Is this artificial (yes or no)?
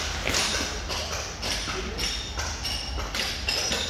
no